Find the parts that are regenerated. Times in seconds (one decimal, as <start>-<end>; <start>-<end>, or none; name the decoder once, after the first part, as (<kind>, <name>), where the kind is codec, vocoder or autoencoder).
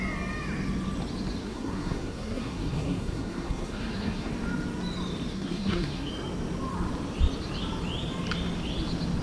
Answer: 1.4-4.3 (codec, SNAC); 5.3-6.1